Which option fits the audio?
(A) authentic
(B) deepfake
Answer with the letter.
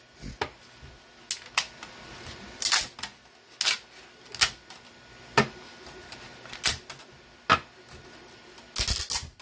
A